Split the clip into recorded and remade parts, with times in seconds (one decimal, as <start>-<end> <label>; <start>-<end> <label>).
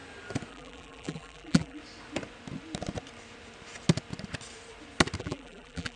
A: 0.0-0.5 recorded; 0.5-1.8 remade; 1.8-5.2 recorded; 5.2-6.0 remade